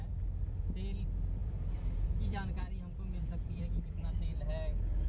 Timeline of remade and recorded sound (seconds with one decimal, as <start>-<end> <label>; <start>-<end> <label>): 0.0-1.4 recorded; 1.4-4.5 remade; 4.5-5.1 recorded